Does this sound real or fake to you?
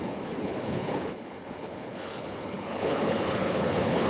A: fake